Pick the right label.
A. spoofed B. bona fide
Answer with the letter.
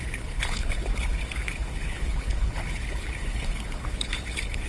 A